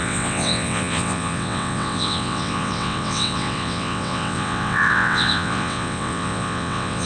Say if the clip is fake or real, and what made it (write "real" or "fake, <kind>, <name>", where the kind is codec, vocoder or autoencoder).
fake, vocoder, WaveNeXt